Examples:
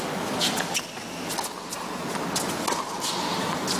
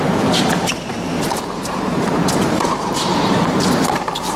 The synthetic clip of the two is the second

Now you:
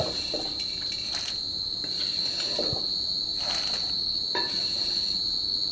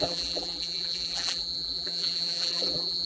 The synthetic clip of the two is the second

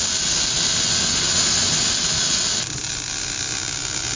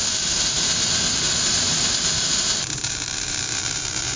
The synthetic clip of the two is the second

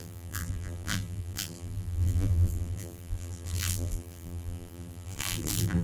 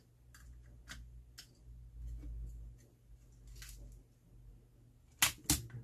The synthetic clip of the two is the first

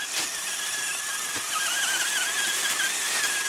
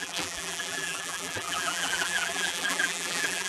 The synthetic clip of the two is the second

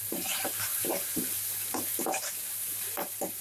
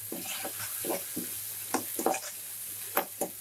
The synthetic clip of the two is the first